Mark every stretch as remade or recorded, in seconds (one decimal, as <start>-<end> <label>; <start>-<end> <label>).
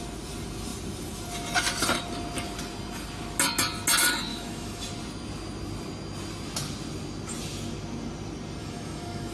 0.0-4.3 recorded; 4.3-4.9 remade; 4.9-8.6 recorded; 8.6-9.3 remade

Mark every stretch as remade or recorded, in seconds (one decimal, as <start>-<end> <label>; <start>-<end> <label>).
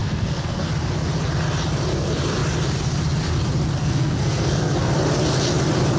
0.0-0.6 remade; 0.6-3.8 recorded; 3.8-4.9 remade; 4.9-6.0 recorded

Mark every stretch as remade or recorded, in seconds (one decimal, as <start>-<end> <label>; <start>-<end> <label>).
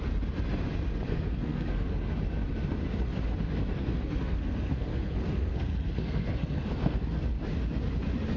0.0-1.1 recorded; 1.1-2.1 remade; 2.1-3.7 recorded; 3.7-7.2 remade; 7.2-8.4 recorded